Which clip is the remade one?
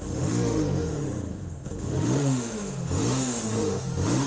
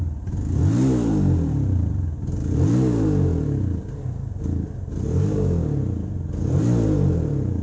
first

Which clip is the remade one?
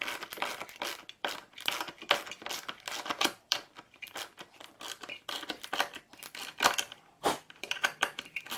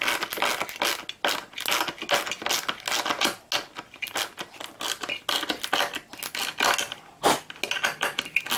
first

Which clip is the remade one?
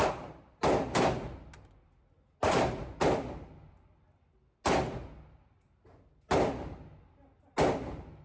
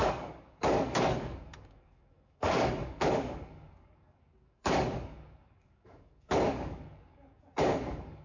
second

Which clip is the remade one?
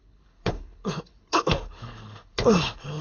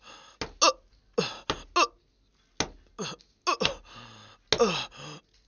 first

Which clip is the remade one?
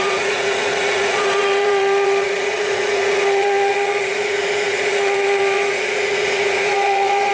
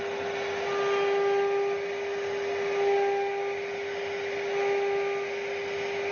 first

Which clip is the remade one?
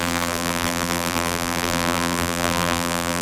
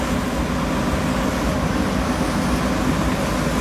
first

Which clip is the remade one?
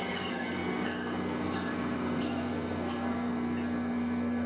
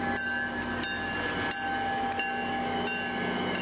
first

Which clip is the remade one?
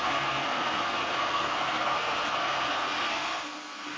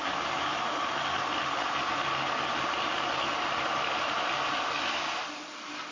first